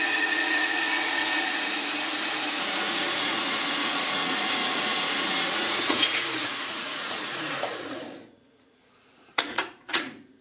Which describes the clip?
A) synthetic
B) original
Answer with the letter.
A